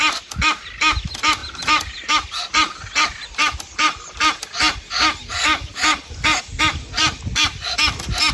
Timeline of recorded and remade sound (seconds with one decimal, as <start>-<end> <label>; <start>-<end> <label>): 0.0-8.3 recorded